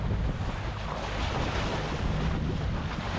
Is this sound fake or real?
real